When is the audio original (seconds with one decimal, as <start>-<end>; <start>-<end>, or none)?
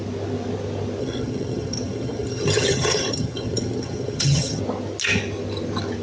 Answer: 0.0-1.0; 4.6-6.0